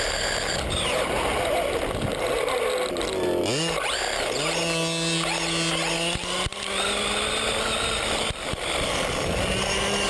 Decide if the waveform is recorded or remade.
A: recorded